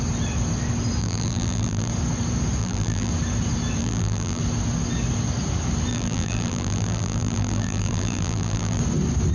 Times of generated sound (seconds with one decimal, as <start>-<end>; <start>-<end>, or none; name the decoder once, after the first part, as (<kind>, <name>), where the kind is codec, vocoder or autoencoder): 1.0-1.9 (vocoder, BigVGAN v2); 2.6-3.1; 3.8-4.4; 5.9-8.8